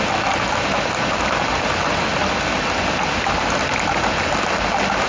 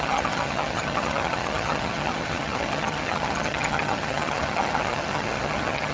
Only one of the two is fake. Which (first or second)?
second